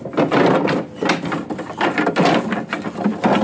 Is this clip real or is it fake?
real